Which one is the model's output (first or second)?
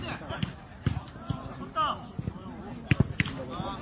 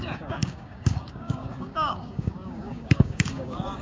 second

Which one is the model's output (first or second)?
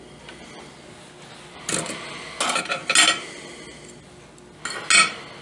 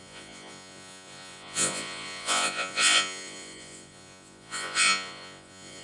second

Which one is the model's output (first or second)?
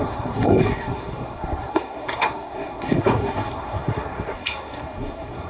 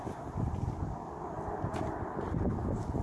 first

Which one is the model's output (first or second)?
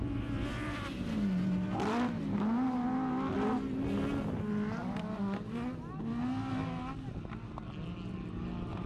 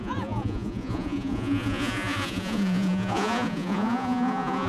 second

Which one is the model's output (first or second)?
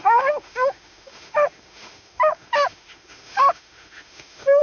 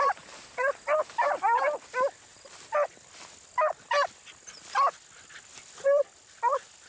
first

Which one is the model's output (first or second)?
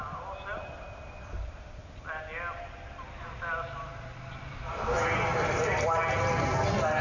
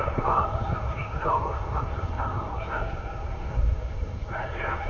second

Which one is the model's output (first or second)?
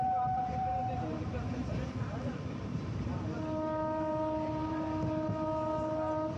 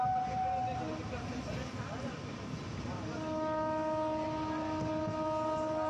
first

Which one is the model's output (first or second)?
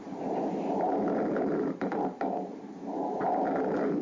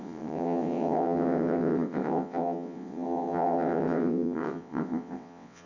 second